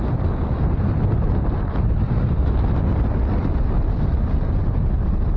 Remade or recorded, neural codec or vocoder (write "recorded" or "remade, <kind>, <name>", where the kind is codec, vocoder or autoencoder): recorded